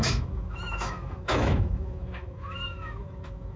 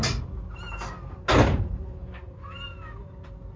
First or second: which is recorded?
second